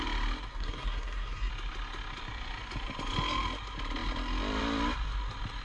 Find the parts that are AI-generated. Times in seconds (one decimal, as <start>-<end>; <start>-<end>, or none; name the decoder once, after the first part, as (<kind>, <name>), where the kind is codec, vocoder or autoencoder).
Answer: 0.5-1.5 (codec, SNAC)